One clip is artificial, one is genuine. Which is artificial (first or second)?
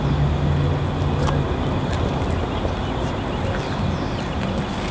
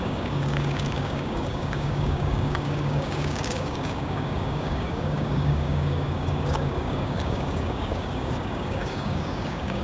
second